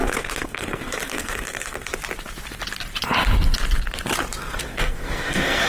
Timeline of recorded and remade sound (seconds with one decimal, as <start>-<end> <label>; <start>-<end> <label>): 0.0-1.9 remade; 1.9-4.6 recorded; 4.6-5.7 remade